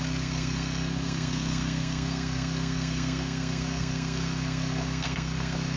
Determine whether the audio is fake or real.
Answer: fake